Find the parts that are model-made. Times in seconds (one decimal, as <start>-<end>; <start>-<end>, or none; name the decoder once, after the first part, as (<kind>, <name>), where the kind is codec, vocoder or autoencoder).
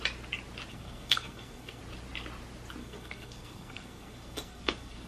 0.7-1.8 (codec, SNAC); 2.8-5.1